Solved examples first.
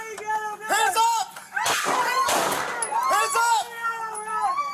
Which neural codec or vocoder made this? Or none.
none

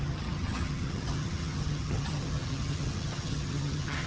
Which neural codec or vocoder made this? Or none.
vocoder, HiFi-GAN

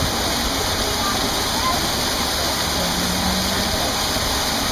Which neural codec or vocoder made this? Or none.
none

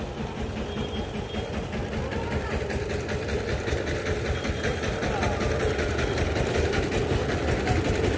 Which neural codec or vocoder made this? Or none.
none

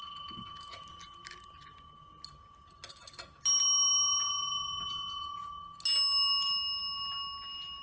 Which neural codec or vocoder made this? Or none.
none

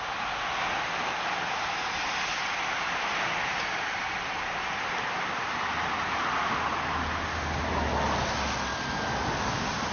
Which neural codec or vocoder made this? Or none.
none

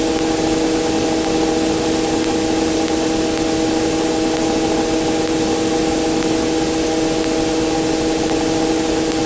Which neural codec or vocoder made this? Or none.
none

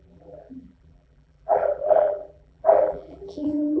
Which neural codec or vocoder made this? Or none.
vocoder, BigVGAN v2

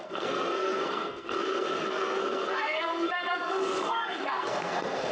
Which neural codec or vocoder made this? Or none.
codec, SNAC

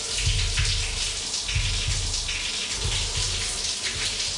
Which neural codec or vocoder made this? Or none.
none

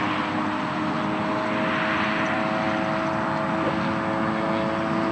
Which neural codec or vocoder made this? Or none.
none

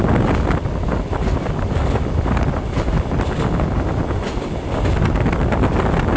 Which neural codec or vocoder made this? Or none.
none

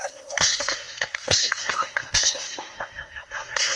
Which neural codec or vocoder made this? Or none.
codec, SNAC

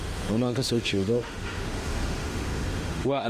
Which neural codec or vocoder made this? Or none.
autoencoder, DAC-VAE